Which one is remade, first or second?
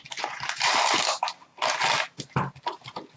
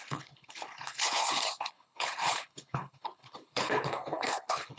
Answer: second